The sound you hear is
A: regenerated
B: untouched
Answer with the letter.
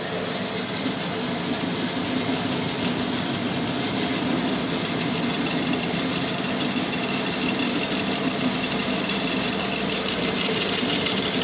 B